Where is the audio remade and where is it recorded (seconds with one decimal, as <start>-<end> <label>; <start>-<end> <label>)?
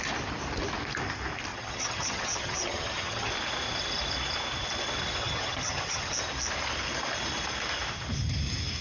0.0-1.5 recorded; 1.5-3.3 remade; 3.3-5.2 recorded; 5.2-6.1 remade; 6.1-8.8 recorded